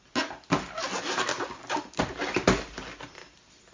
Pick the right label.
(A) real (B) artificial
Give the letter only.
A